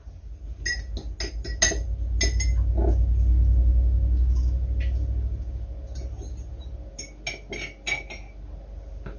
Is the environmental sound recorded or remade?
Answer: recorded